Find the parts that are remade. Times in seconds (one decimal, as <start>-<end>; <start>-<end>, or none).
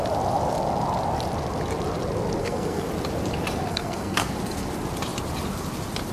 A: 2.4-2.9; 3.7-4.3